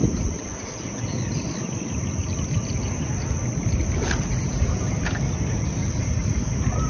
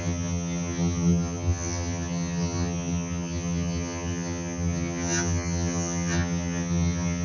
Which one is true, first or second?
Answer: first